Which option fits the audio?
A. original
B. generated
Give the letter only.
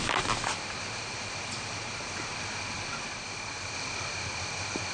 A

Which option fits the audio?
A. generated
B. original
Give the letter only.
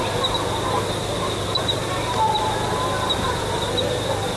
B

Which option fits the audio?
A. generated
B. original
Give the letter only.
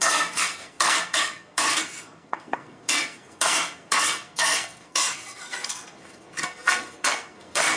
A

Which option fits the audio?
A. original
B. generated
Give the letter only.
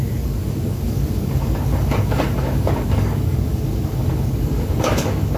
B